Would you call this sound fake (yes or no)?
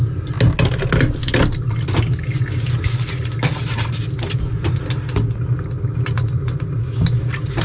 no